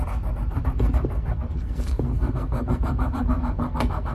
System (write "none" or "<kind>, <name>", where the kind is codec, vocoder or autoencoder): codec, SNAC